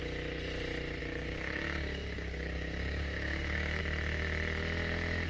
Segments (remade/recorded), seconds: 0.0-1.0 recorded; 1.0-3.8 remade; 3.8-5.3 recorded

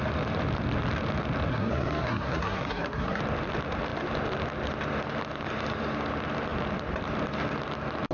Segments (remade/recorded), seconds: 0.0-1.5 recorded; 1.5-3.2 remade; 3.2-8.1 recorded

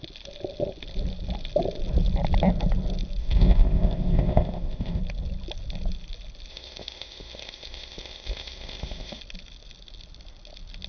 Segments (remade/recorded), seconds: 0.0-3.2 recorded; 3.2-5.0 remade; 5.0-6.5 recorded; 6.5-9.2 remade; 9.2-10.9 recorded

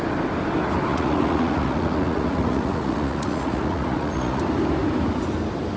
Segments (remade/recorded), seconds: 0.0-0.9 recorded; 0.9-4.4 remade; 4.4-5.8 recorded

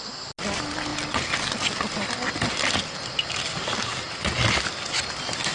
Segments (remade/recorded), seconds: 0.0-5.5 recorded

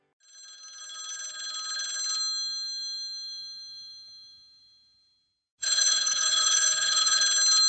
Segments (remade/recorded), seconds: 0.0-5.6 recorded; 5.6-7.2 remade; 7.2-7.7 recorded

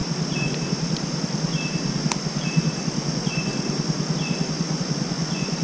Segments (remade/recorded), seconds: 0.0-3.1 recorded; 3.1-3.5 remade; 3.5-4.5 recorded; 4.5-5.6 remade